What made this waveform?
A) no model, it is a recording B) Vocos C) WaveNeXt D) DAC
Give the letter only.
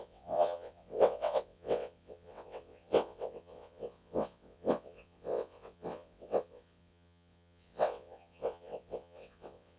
C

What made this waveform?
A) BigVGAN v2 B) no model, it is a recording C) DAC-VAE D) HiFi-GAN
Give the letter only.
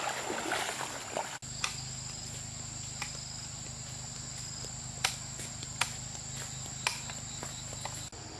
B